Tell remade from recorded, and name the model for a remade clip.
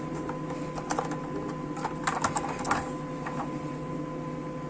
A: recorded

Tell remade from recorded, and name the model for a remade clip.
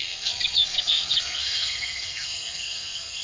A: remade, codec, SNAC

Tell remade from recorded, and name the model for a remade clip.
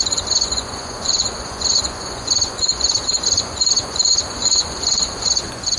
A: remade, vocoder, Vocos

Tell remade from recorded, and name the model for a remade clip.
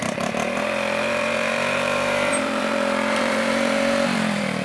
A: remade, vocoder, BigVGAN v2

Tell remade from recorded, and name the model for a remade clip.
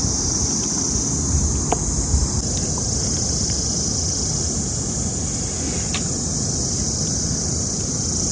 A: recorded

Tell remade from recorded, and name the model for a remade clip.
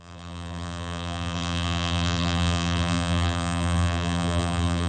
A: remade, vocoder, BigVGAN v2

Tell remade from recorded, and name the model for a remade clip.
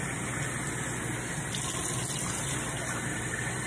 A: recorded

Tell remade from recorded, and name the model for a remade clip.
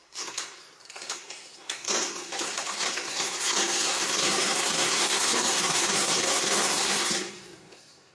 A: remade, codec, SNAC